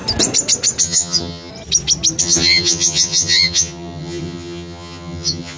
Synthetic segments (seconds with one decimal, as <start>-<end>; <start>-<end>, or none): 0.8-1.5; 2.2-5.6